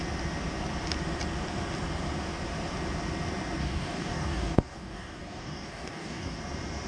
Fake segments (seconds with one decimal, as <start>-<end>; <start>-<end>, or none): 3.6-6.4